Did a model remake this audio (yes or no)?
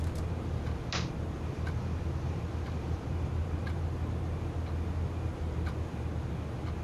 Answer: no